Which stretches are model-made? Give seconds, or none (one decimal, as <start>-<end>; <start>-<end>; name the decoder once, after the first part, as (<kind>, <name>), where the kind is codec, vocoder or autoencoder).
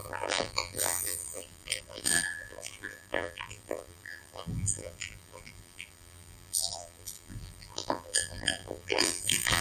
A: 0.0-9.6 (vocoder, BigVGAN v2)